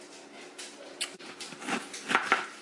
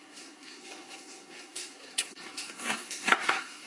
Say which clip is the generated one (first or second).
second